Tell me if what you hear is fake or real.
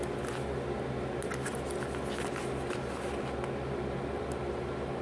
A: real